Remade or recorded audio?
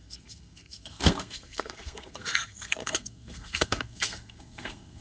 remade